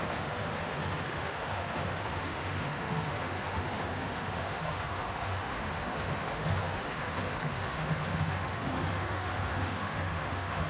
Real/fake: fake